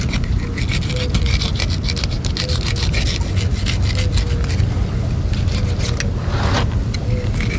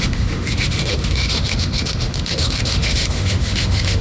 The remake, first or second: second